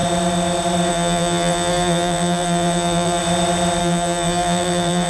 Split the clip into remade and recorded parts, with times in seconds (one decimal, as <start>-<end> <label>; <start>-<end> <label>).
0.0-0.9 recorded; 0.9-3.2 remade; 3.2-3.8 recorded; 3.8-5.1 remade